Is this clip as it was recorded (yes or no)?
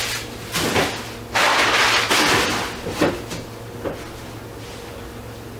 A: yes